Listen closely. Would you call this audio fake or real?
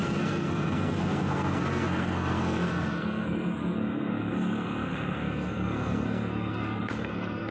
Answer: fake